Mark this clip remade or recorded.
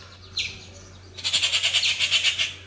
recorded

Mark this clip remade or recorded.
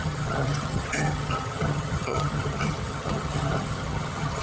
remade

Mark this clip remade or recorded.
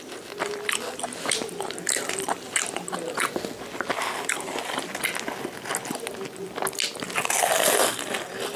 recorded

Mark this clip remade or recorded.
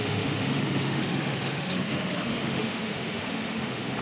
remade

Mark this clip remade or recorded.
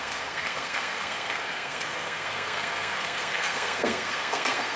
remade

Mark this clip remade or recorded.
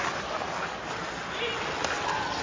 recorded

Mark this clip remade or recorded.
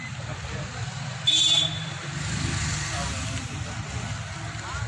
recorded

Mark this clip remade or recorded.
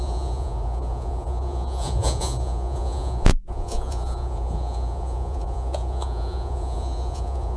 remade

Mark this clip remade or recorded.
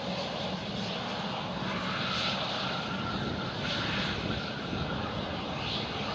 recorded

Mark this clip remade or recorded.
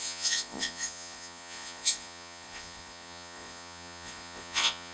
remade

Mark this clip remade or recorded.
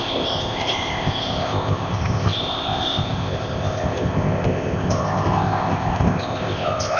remade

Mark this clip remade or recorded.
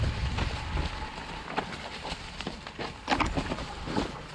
recorded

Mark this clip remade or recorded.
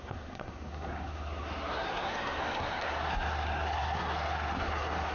remade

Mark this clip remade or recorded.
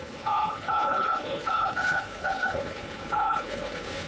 remade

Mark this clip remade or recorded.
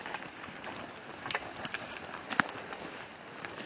recorded